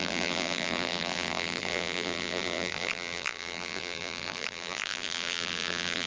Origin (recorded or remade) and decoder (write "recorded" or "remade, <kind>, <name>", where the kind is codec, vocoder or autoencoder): remade, vocoder, BigVGAN v2